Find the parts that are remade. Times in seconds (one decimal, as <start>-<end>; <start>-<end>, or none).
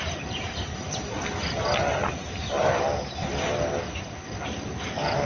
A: none